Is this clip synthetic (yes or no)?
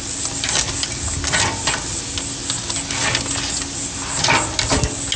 no